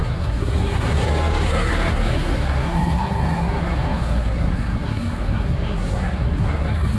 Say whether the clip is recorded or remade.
remade